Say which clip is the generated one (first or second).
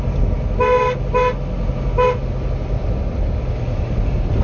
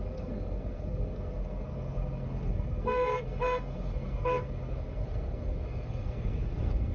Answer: second